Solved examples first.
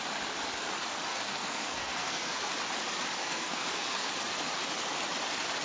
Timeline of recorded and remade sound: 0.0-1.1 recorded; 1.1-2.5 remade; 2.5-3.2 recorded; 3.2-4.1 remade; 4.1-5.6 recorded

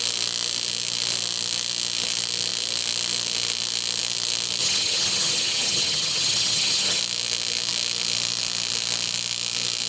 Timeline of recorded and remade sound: 0.0-4.6 recorded; 4.6-7.0 remade; 7.0-9.9 recorded

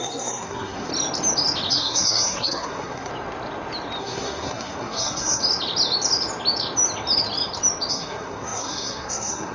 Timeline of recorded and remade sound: 0.0-0.9 remade; 0.9-1.7 recorded; 1.7-3.1 remade; 3.1-4.0 recorded; 4.0-5.4 remade; 5.4-7.9 recorded; 7.9-9.5 remade

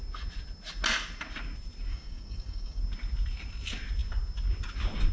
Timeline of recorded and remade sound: 0.0-1.9 recorded; 1.9-2.8 remade; 2.8-5.1 recorded

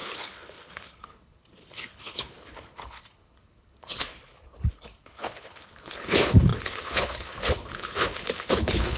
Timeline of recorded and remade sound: 0.0-9.0 remade

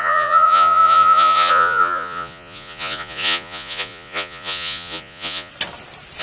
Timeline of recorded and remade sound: 0.0-5.5 remade; 5.5-6.2 recorded

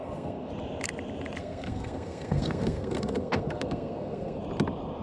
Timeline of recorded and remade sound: 0.0-0.5 remade; 0.5-1.4 recorded; 1.4-4.4 remade; 4.4-5.0 recorded